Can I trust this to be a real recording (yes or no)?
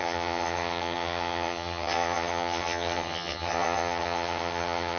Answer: no